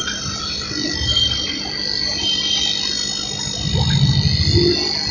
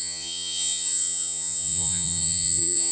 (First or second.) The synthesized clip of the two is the second